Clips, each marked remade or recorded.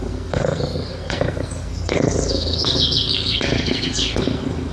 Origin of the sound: remade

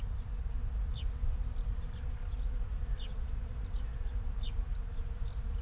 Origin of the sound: recorded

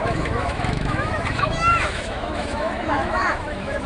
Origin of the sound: remade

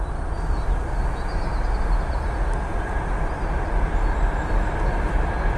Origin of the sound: recorded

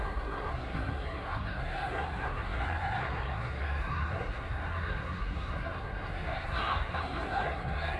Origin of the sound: remade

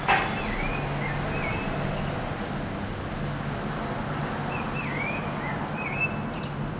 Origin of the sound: recorded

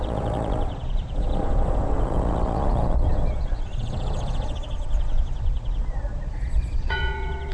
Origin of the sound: remade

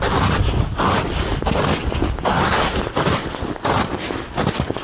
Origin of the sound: recorded